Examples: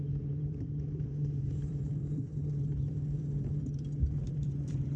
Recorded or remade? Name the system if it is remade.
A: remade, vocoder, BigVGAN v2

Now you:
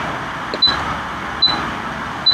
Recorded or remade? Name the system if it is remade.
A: recorded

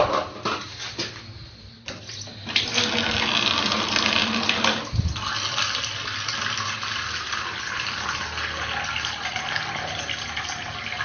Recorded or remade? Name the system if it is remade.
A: recorded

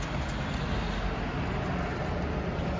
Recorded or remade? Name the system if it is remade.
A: recorded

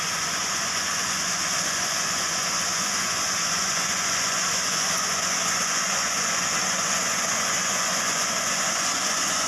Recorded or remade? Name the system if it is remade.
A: remade, vocoder, Vocos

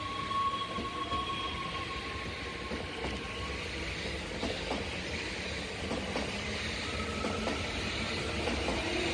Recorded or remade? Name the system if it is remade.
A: recorded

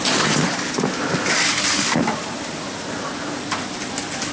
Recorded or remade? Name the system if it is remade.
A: recorded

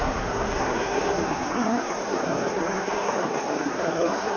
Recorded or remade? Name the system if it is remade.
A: remade, codec, SNAC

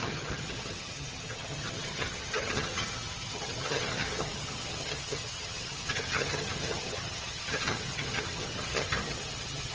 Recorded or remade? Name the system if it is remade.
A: remade, vocoder, HiFi-GAN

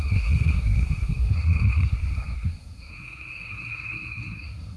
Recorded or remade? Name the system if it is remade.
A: remade, codec, SNAC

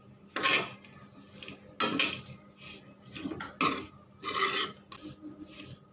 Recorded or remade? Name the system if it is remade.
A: recorded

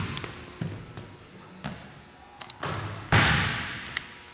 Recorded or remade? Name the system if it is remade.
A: recorded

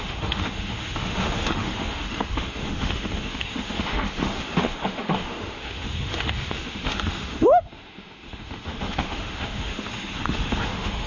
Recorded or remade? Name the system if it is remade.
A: remade, autoencoder, DAC-VAE